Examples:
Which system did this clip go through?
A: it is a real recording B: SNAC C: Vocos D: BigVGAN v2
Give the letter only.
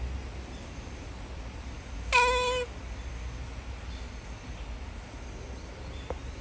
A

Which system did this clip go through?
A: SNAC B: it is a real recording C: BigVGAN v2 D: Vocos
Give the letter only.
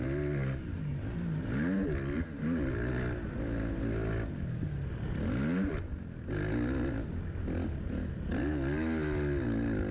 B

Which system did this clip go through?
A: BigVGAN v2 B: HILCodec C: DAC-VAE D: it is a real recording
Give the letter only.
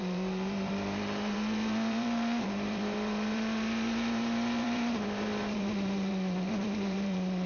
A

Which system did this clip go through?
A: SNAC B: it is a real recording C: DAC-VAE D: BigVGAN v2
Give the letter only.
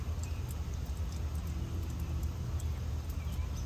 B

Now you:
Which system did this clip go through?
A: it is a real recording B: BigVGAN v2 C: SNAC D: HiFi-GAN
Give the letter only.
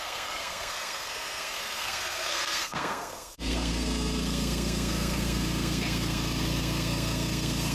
C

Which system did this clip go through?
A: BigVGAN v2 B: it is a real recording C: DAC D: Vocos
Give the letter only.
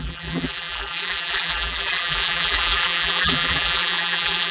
A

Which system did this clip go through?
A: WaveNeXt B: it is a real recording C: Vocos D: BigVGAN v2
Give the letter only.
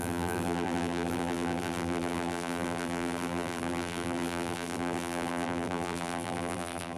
D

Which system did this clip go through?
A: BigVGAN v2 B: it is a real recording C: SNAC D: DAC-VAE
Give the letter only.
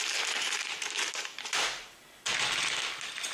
B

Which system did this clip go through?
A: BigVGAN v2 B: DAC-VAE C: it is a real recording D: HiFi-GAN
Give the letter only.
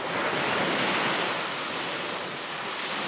C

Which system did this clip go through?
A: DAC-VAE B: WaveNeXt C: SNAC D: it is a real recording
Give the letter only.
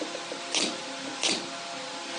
D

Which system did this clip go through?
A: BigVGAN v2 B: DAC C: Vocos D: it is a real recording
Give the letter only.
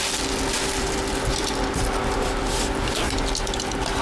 D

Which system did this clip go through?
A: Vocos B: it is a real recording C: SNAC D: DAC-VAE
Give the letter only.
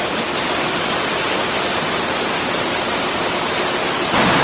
B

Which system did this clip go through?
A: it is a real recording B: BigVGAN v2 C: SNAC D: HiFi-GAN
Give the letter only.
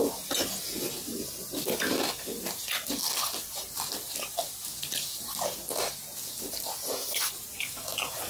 A